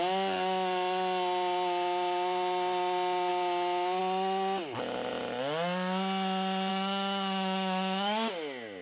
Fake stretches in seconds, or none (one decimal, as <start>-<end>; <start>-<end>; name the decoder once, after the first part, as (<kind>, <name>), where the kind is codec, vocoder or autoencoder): 6.7-8.3 (autoencoder, DAC-VAE)